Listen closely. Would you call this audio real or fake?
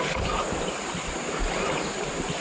real